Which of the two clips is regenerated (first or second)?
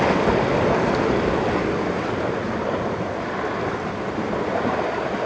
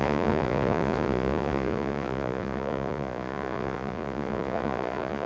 second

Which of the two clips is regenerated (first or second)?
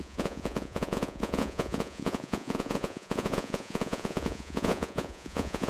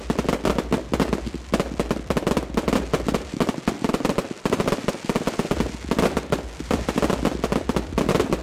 first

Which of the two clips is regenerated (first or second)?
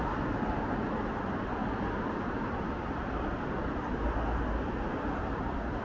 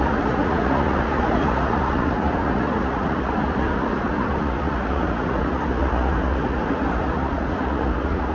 second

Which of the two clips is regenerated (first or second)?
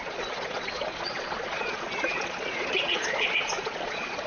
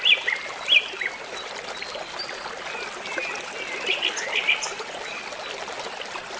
first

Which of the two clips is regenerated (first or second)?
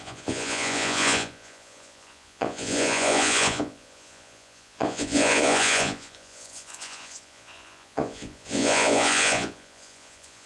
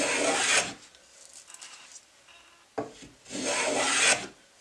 first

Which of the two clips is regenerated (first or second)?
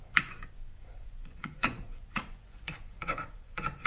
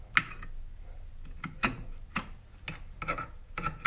first